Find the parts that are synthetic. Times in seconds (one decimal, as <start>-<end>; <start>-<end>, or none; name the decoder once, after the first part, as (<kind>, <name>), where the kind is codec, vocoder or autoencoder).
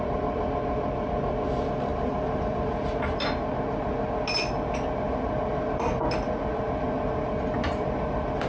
none